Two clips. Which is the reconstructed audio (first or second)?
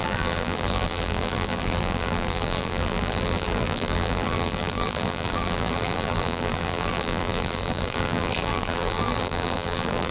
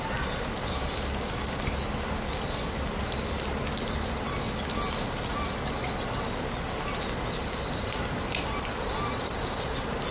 first